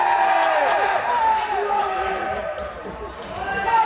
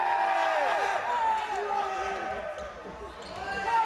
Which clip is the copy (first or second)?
first